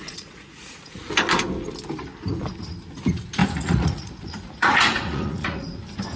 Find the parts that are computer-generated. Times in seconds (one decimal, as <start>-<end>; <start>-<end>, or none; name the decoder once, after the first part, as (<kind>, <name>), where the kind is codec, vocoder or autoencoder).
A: 0.0-1.1 (vocoder, Vocos); 3.4-5.8